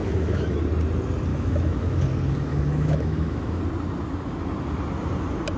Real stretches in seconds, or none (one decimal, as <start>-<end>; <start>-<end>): 0.6-1.3; 2.0-2.5; 3.6-5.6